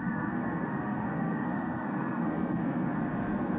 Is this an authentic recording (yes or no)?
no